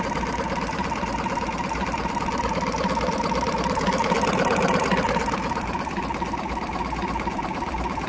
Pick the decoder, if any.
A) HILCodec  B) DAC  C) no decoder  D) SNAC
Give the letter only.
C